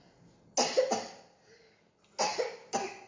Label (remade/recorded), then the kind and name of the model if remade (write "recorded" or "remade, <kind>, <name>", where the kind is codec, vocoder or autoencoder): recorded